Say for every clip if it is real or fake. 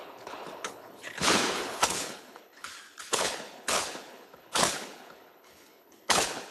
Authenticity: fake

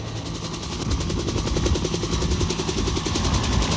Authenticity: real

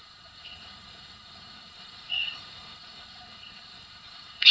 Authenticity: fake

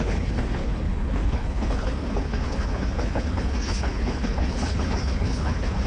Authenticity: fake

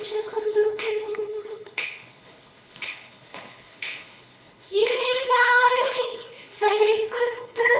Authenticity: fake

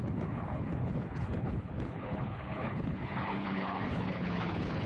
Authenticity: fake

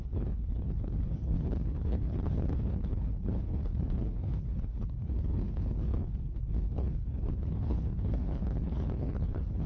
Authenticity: fake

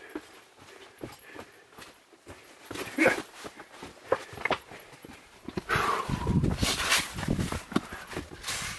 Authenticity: real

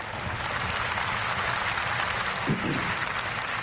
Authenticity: real